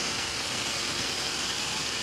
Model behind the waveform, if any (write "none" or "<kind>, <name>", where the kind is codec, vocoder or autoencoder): codec, SNAC